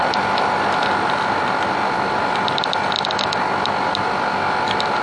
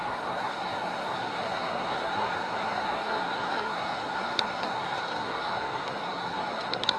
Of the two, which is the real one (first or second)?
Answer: first